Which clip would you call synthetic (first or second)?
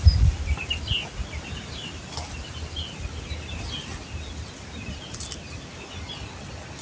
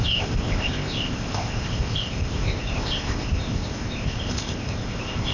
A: second